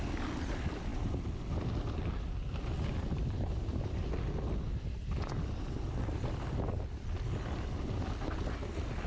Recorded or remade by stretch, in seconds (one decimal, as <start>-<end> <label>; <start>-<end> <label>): 0.0-9.1 recorded